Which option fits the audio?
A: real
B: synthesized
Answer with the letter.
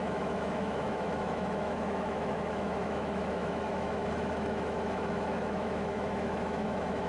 B